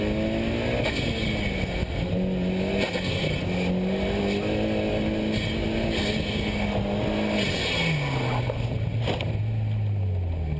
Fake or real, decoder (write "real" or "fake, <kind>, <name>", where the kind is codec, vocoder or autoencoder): real